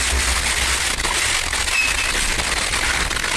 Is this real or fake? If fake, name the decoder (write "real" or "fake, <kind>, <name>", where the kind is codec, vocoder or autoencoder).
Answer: real